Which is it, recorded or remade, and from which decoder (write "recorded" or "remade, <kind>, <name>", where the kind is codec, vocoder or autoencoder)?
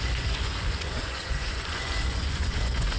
remade, vocoder, Vocos